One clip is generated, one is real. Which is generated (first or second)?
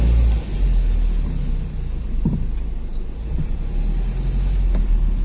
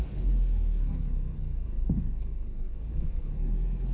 second